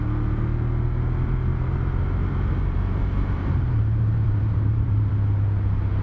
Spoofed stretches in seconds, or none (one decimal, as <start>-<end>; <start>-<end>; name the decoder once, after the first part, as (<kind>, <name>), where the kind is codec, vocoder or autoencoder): 1.5-5.1 (vocoder, BigVGAN v2)